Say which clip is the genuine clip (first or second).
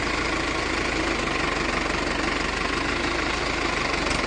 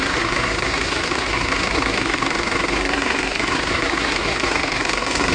first